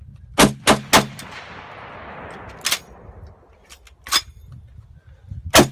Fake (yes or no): no